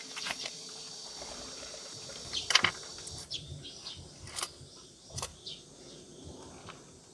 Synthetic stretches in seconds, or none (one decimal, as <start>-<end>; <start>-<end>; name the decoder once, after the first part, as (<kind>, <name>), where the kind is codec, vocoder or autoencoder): 0.0-5.3 (vocoder, BigVGAN v2)